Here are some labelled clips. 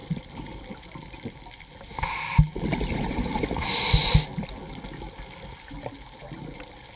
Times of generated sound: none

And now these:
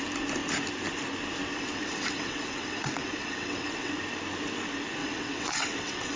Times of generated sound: 1.5-3.9 (vocoder, WaveNeXt); 5.0-6.2

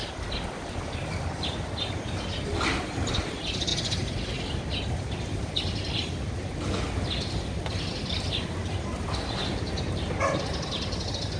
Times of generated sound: none